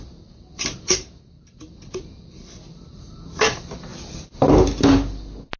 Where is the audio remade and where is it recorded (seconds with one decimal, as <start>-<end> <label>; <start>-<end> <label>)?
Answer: 0.0-5.6 recorded